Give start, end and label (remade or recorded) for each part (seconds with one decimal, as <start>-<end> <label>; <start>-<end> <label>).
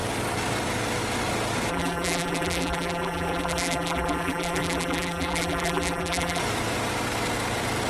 0.0-1.7 recorded; 1.7-6.4 remade; 6.4-7.9 recorded